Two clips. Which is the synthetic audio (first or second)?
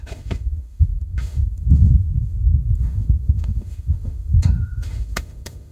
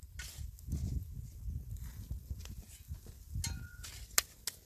first